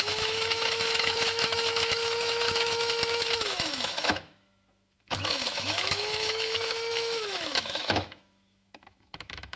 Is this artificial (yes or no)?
yes